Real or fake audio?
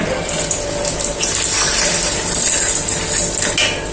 real